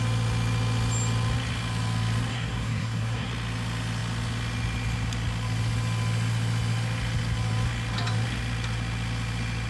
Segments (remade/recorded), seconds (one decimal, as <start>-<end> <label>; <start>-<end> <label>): 0.0-2.3 recorded; 2.3-3.3 remade; 3.3-9.7 recorded